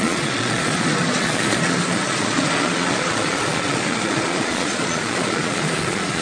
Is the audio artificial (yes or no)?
yes